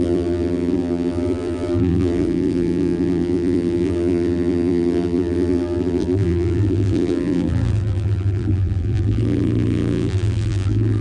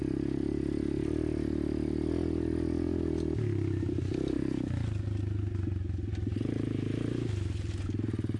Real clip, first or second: second